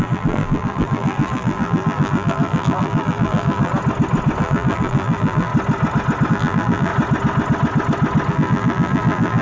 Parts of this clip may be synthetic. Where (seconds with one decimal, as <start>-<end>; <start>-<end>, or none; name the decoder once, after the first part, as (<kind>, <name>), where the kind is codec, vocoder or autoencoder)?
0.0-3.7 (vocoder, BigVGAN v2); 4.4-5.5; 6.3-6.9; 8.3-9.4